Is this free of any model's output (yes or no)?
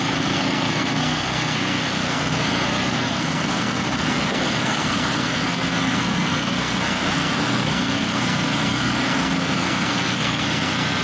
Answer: no